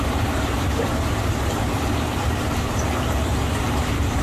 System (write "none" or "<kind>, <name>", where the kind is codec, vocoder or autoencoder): vocoder, BigVGAN v2